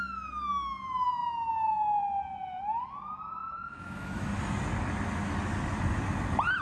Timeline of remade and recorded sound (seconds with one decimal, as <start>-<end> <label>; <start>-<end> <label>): 0.0-3.4 recorded; 3.4-4.3 remade; 4.3-6.6 recorded